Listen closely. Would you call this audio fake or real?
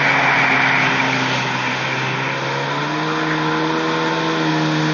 real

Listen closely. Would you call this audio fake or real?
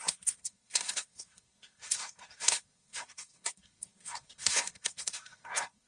fake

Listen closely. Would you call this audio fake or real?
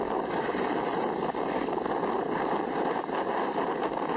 real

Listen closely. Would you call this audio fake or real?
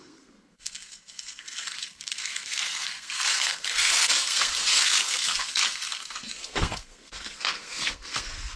fake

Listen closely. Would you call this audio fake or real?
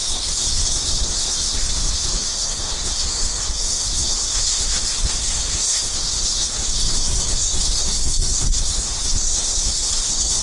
fake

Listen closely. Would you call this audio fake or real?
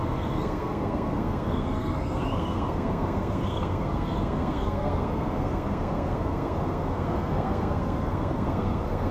fake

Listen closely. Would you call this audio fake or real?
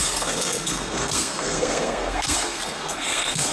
fake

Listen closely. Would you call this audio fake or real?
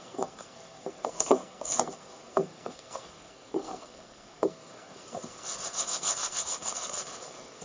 fake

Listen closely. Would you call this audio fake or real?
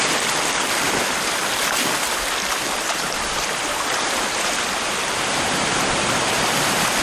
real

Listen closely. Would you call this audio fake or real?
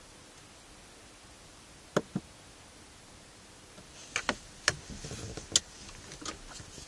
real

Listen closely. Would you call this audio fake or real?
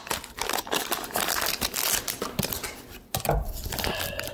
real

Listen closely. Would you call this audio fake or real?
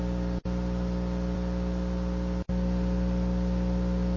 real